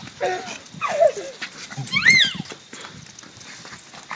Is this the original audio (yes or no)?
yes